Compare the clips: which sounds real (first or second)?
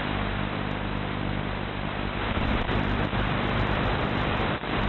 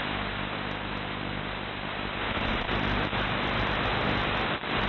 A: second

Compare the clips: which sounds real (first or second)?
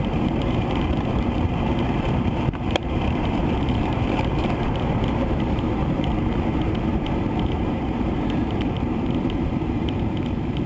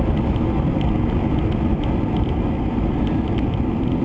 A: second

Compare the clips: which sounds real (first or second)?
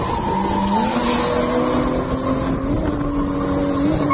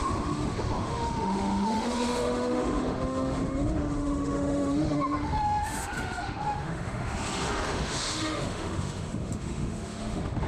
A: first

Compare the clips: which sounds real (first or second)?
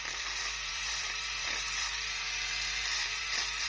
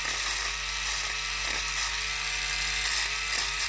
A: second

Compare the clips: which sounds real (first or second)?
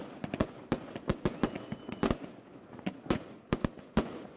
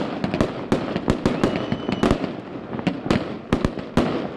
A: second